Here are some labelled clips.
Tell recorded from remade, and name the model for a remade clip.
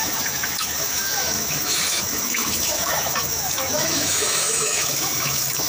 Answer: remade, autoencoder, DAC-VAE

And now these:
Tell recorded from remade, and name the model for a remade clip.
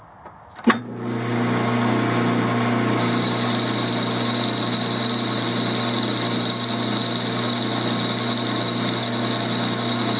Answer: recorded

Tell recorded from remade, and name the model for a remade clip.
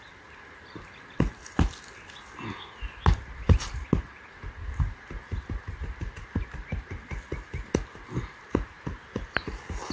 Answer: recorded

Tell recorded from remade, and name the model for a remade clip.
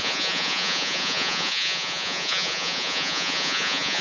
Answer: remade, vocoder, Vocos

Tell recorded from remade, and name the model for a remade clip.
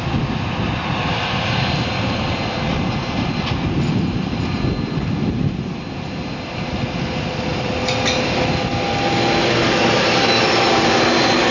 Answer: recorded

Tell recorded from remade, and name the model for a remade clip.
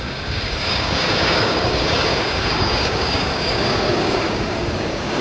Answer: remade, codec, DAC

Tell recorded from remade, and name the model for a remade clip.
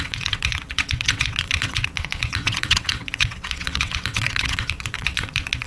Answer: remade, vocoder, WaveNeXt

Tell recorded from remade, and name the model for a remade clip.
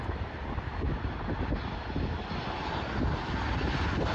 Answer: recorded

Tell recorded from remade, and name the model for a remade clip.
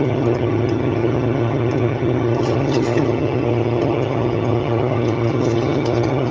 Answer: remade, vocoder, HiFi-GAN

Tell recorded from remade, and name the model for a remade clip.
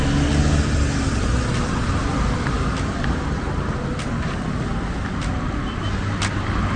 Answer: recorded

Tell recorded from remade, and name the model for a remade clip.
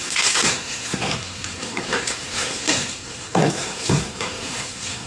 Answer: remade, codec, SNAC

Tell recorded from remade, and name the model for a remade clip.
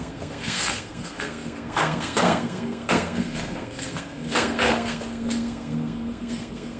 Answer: remade, codec, SNAC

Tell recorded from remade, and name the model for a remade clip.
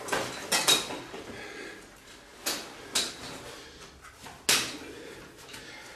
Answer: recorded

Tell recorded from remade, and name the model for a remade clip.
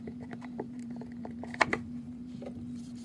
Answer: remade, vocoder, BigVGAN v2